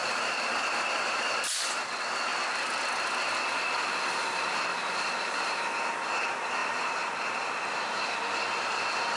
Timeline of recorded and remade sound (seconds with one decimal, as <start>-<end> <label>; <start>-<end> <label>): 0.0-0.5 remade; 0.5-4.7 recorded; 4.7-5.6 remade; 5.6-6.6 recorded; 6.6-7.1 remade; 7.1-9.2 recorded